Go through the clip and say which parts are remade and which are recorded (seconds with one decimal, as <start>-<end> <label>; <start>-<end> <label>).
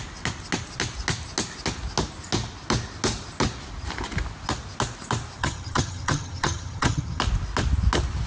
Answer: 0.0-5.4 recorded; 5.4-7.2 remade; 7.2-8.3 recorded